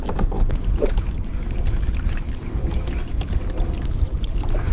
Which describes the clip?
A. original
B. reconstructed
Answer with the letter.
B